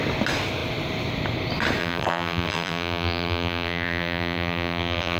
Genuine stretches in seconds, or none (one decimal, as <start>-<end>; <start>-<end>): 0.0-1.8